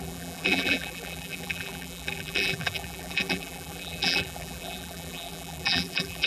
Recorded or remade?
remade